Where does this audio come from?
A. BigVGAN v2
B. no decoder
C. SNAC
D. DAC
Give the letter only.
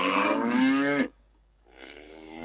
D